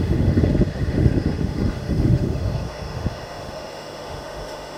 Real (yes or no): no